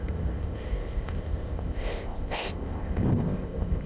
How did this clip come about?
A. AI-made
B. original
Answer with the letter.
A